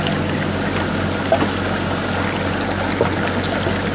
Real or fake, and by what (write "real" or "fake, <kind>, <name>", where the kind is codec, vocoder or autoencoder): real